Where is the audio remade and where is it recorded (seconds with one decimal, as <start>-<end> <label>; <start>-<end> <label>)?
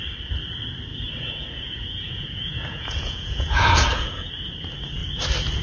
0.0-0.9 recorded; 0.9-4.3 remade; 4.3-5.6 recorded